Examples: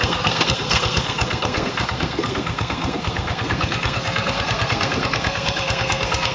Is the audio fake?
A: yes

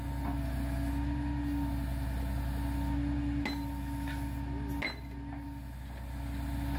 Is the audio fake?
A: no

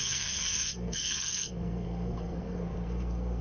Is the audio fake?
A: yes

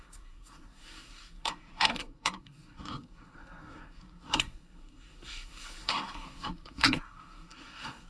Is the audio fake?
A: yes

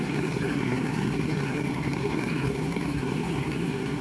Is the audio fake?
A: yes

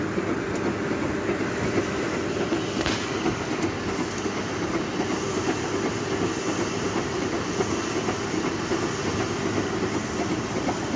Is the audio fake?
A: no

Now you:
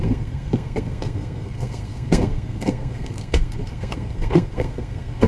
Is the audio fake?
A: yes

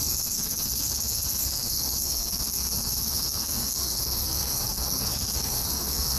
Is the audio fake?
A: yes